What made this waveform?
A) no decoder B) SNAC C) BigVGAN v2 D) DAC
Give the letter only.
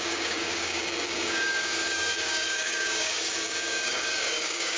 D